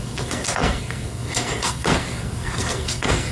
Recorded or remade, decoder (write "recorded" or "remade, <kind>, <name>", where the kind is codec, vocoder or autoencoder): remade, codec, SNAC